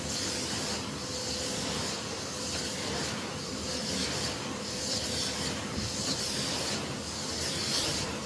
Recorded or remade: recorded